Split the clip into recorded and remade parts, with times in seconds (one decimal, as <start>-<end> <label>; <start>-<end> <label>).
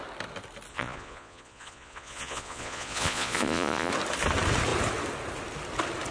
0.0-0.7 recorded; 0.7-3.9 remade; 3.9-6.1 recorded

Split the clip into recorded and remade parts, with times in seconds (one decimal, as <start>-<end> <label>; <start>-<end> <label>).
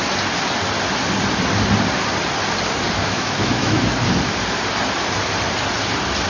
0.0-3.0 recorded; 3.0-3.8 remade; 3.8-6.3 recorded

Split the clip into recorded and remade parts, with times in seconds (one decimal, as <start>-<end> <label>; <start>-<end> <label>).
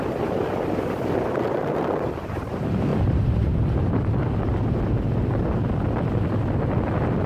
0.0-2.9 recorded; 2.9-4.3 remade; 4.3-7.3 recorded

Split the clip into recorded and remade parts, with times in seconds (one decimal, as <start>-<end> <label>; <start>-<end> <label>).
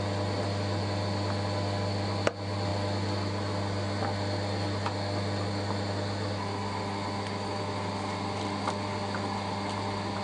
0.0-10.2 recorded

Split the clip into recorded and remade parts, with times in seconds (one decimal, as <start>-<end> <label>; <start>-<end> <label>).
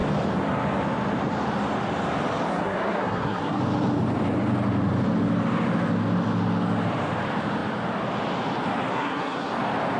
0.0-2.5 recorded; 2.5-3.6 remade; 3.6-8.9 recorded; 8.9-9.5 remade; 9.5-10.0 recorded